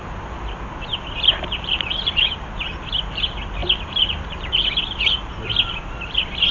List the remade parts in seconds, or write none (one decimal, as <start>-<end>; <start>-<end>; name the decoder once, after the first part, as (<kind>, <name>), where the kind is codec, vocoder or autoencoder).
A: 0.9-3.0 (vocoder, BigVGAN v2); 3.6-5.7